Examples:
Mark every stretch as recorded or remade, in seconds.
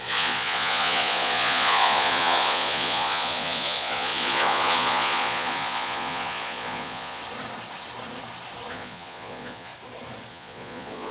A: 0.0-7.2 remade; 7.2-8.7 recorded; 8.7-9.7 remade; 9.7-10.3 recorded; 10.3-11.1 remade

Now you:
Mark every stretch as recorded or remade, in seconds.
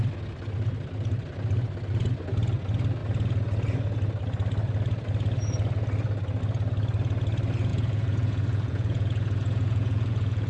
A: 0.0-7.7 recorded; 7.7-10.5 remade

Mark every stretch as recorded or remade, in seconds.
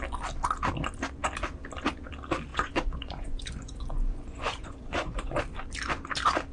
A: 0.0-2.5 recorded; 2.5-5.4 remade; 5.4-6.5 recorded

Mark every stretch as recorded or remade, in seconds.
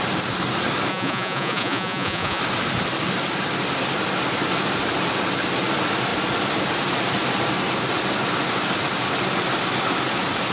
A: 0.0-0.9 recorded; 0.9-2.4 remade; 2.4-10.5 recorded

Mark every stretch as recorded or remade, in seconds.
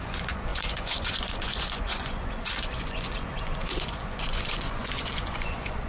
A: 0.0-5.9 remade